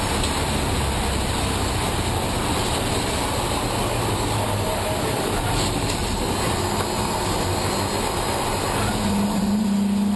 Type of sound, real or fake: real